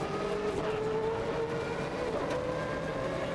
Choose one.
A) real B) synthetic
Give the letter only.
A